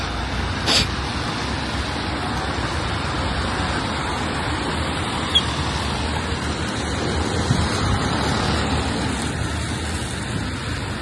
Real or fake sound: real